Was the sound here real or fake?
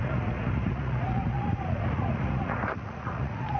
fake